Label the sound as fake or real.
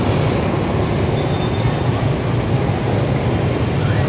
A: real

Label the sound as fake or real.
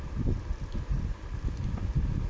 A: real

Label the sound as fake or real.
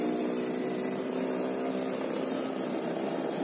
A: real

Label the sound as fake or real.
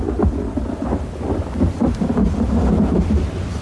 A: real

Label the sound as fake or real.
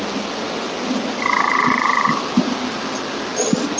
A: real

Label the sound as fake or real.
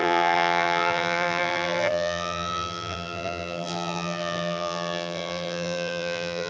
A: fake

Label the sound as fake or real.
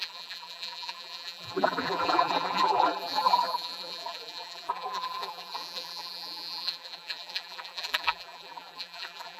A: fake